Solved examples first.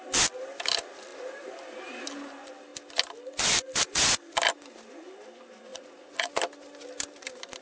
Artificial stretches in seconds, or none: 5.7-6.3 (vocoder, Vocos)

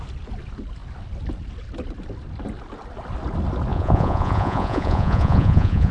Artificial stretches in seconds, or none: 3.7-5.9 (vocoder, Vocos)